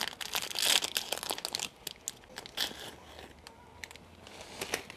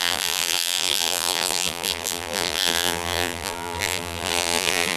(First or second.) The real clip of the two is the first